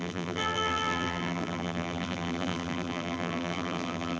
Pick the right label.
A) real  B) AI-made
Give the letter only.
B